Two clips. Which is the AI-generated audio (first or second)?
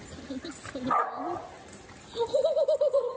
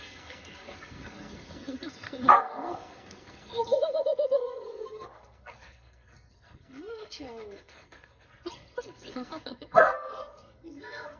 second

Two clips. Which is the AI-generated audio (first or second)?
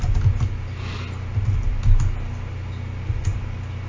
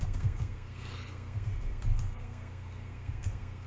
second